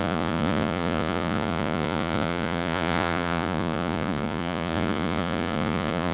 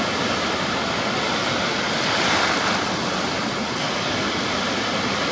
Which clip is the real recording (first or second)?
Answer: second